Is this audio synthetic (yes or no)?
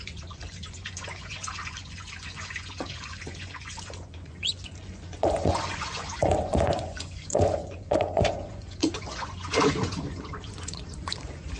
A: yes